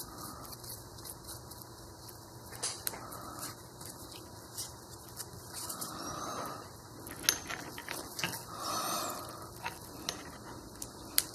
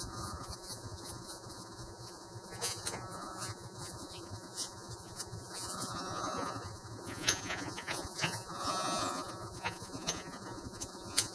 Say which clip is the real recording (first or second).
first